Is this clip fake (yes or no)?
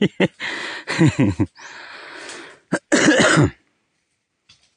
no